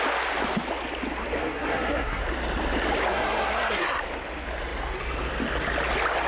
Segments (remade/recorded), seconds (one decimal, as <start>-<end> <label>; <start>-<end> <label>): 0.0-1.4 recorded; 1.4-2.2 remade; 2.2-3.1 recorded; 3.1-4.0 remade; 4.0-6.3 recorded